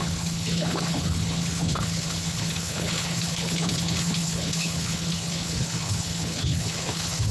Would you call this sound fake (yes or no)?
yes